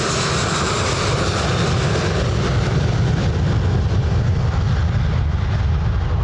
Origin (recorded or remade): recorded